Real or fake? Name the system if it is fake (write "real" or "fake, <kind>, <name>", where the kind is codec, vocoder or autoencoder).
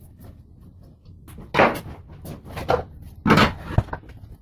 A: real